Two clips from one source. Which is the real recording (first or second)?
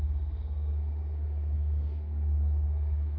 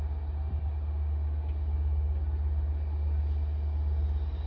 second